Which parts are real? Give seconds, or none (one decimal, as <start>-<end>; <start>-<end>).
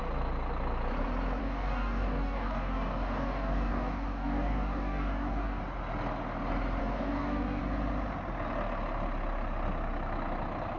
0.0-1.4; 5.6-6.8; 7.6-10.8